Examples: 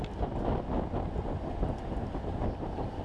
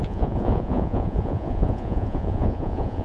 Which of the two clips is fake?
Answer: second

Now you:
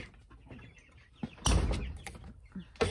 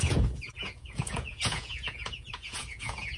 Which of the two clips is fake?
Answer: second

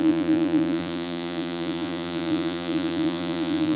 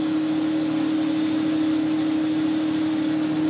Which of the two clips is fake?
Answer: first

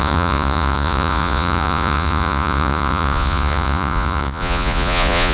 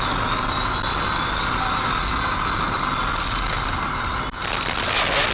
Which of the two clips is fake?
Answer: first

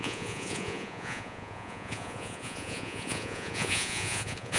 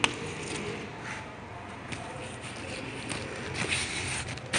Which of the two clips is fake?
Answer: first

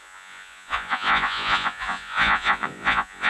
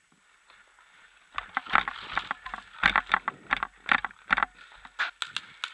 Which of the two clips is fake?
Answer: first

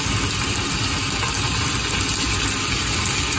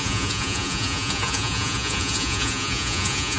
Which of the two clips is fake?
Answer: second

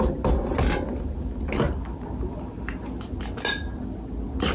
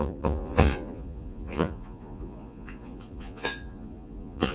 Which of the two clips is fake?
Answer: second